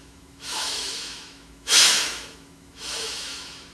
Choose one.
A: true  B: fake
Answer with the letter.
B